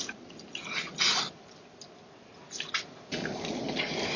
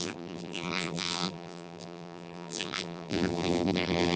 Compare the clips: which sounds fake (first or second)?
second